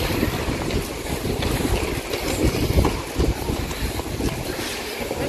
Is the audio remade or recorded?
recorded